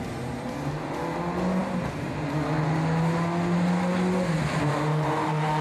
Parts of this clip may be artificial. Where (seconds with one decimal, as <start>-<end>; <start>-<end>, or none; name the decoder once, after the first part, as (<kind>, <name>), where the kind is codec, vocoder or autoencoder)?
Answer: none